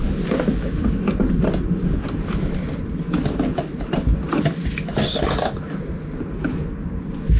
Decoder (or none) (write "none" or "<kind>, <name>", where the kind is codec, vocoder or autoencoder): none